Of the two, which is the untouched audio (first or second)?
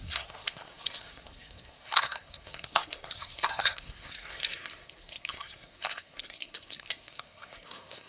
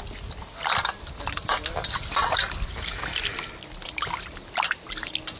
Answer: second